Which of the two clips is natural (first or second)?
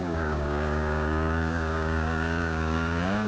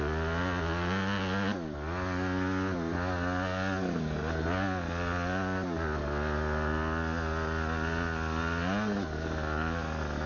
second